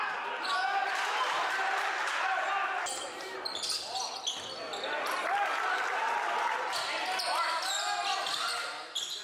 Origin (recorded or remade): recorded